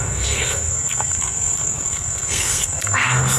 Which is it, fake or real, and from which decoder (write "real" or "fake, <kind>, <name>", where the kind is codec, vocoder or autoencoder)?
fake, codec, SNAC